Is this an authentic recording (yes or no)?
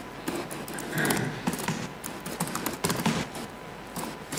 yes